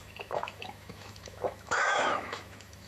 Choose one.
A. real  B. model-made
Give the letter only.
B